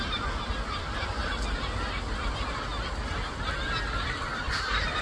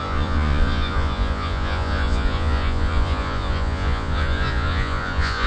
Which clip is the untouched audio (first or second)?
first